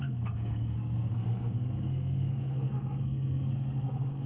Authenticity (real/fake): fake